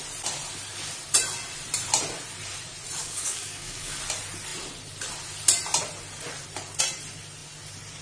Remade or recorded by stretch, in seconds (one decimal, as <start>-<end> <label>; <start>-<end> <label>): 0.0-3.0 recorded; 3.0-4.0 remade; 4.0-8.0 recorded